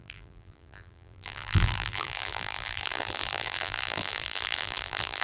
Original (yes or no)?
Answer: no